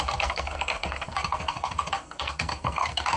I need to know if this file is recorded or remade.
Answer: remade